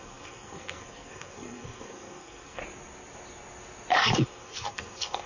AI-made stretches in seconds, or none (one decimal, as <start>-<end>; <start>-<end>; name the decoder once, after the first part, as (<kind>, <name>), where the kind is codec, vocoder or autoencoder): 0.0-2.6 (codec, SNAC); 4.0-5.3